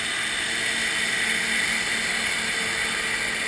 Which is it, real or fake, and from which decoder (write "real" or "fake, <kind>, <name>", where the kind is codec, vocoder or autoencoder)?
real